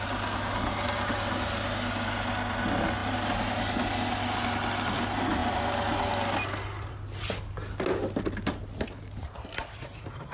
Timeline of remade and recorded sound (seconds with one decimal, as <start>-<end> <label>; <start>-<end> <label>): 0.0-10.3 recorded